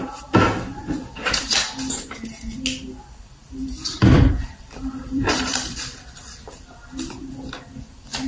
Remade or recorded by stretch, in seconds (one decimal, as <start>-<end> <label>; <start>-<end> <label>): 0.0-3.4 recorded; 3.4-6.7 remade; 6.7-8.3 recorded